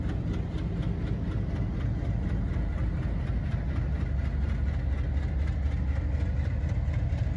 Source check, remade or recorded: recorded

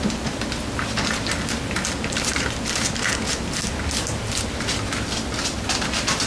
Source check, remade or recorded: recorded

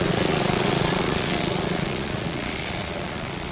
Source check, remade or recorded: remade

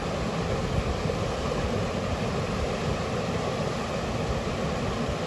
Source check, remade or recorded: recorded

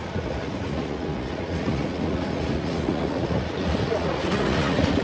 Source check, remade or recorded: remade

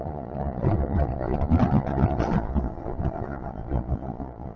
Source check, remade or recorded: remade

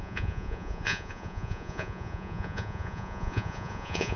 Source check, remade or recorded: remade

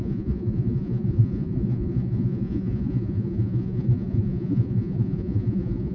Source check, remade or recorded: remade